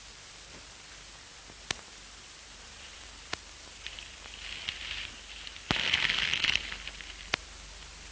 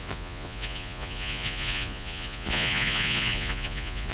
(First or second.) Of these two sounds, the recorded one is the first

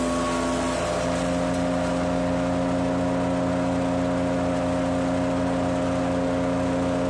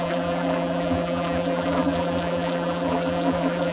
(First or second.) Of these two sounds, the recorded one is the first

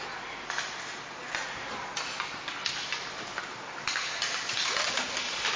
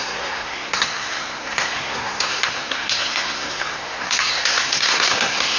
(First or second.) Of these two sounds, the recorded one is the first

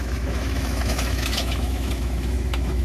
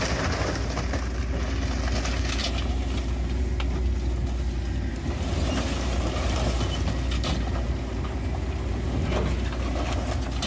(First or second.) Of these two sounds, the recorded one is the second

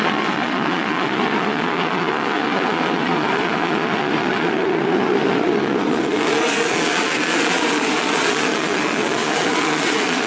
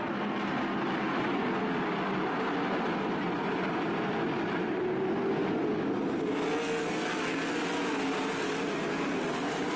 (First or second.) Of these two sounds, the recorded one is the second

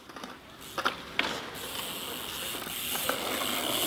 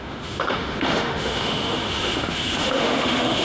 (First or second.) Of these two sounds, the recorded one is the first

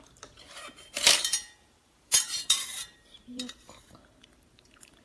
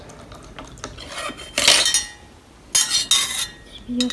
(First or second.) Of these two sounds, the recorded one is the second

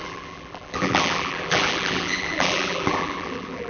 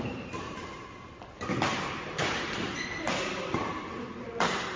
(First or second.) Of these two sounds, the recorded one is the second